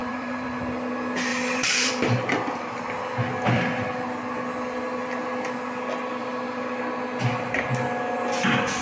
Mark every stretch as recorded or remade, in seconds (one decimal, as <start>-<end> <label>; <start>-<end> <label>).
0.0-0.6 remade; 0.6-1.3 recorded; 1.3-1.9 remade; 1.9-6.2 recorded; 6.2-6.8 remade; 6.8-8.8 recorded